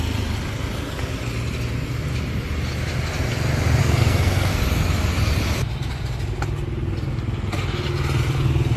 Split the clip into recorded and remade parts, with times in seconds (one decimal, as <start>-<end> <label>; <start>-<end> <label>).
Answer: 0.0-3.8 recorded; 3.8-4.6 remade; 4.6-8.8 recorded